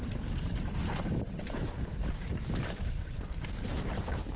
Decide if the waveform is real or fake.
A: fake